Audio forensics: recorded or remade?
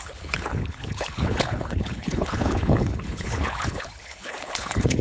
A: remade